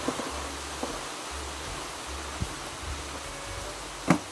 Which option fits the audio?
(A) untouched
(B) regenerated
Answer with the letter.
A